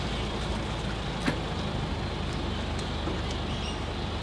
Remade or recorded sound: recorded